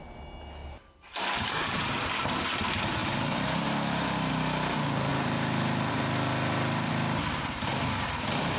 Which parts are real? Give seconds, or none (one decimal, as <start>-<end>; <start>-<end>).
0.0-0.6; 1.8-5.1; 6.9-8.6